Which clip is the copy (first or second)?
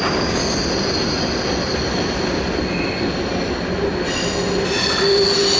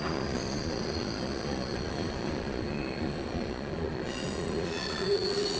second